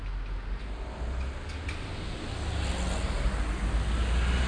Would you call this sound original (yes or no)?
yes